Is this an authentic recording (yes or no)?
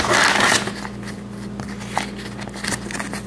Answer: yes